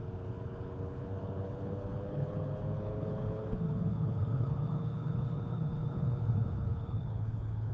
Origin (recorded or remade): remade